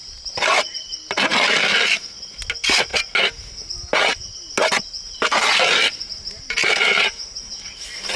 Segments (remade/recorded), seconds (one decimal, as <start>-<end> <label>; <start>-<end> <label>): 0.0-8.2 recorded